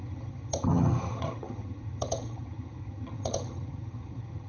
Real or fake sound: fake